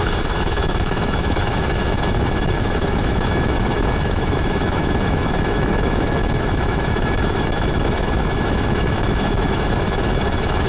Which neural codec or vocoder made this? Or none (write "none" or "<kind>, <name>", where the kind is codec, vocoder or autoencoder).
autoencoder, DAC-VAE